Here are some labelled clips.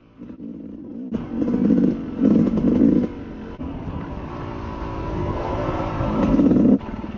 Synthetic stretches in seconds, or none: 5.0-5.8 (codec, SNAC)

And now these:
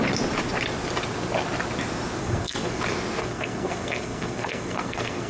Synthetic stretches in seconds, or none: 2.2-2.8 (codec, SNAC); 3.2-5.3